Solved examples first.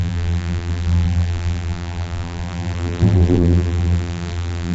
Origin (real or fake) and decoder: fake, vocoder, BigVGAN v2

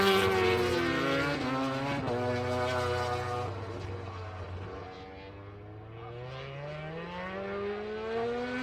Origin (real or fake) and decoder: real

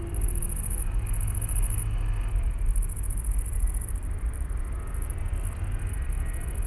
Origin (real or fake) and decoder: real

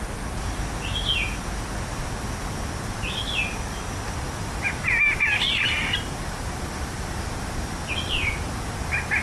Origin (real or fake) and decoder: real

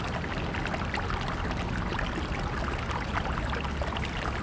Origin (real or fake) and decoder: real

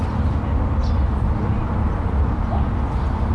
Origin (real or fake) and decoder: real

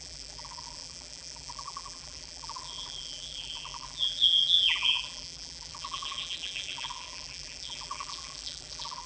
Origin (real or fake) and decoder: fake, vocoder, BigVGAN v2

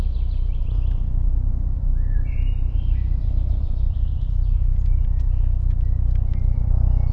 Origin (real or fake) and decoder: fake, vocoder, BigVGAN v2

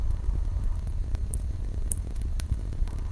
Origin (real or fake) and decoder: fake, vocoder, BigVGAN v2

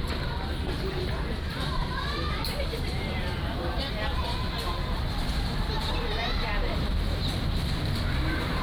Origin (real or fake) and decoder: fake, vocoder, BigVGAN v2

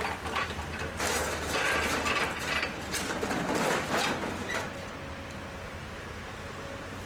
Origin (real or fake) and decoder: real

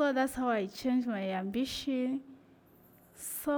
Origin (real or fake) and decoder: real